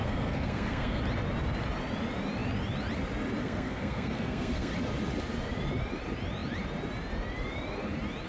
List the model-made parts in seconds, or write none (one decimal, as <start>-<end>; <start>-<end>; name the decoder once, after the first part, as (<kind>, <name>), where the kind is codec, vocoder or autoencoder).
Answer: 0.0-1.0 (codec, SNAC); 3.4-4.7